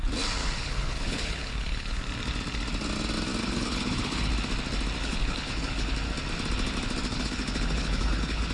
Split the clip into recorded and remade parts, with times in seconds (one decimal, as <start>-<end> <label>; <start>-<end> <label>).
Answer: 0.0-0.4 recorded; 0.4-2.0 remade; 2.0-3.4 recorded; 3.4-4.3 remade; 4.3-5.0 recorded; 5.0-5.9 remade; 5.9-7.1 recorded; 7.1-8.5 remade

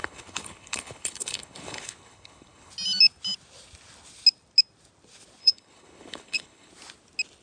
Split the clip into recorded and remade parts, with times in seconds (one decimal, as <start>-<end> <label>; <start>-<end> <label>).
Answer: 0.0-2.7 remade; 2.7-5.4 recorded; 5.4-6.7 remade; 6.7-7.4 recorded

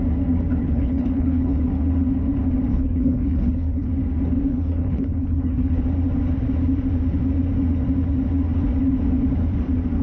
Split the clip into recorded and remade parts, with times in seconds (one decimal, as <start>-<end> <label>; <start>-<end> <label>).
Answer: 0.0-0.6 recorded; 0.6-1.6 remade; 1.6-2.7 recorded; 2.7-3.9 remade; 3.9-4.5 recorded; 4.5-5.8 remade; 5.8-10.0 recorded

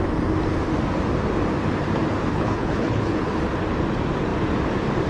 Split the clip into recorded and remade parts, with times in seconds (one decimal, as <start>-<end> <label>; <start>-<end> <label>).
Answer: 0.0-2.3 recorded; 2.3-3.2 remade; 3.2-5.1 recorded

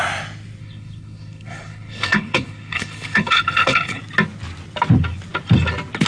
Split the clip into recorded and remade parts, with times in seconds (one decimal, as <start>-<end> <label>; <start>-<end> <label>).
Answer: 0.0-0.6 recorded; 0.6-4.0 remade; 4.0-6.1 recorded

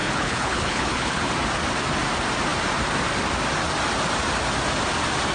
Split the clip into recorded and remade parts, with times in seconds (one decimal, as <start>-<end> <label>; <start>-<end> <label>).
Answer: 0.0-1.2 remade; 1.2-5.3 recorded

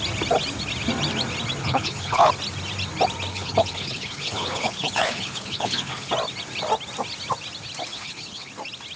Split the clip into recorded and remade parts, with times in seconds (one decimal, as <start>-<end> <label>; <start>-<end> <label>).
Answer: 0.0-1.6 recorded; 1.6-2.3 remade; 2.3-3.3 recorded; 3.3-6.1 remade; 6.1-7.9 recorded; 7.9-8.5 remade; 8.5-9.0 recorded

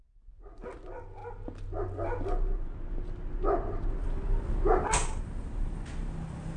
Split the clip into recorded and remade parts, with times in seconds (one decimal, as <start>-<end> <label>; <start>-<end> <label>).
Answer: 0.0-6.6 recorded